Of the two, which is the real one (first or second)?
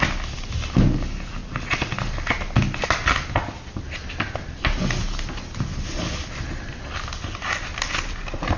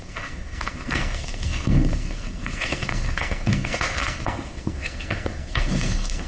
first